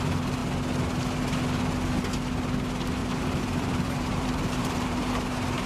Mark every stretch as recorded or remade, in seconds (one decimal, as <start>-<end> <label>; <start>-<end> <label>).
0.0-3.0 recorded; 3.0-5.1 remade; 5.1-5.7 recorded